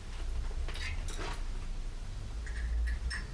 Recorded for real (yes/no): yes